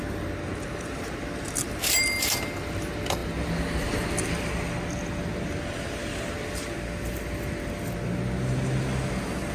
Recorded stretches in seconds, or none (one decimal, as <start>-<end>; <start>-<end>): 0.0-9.5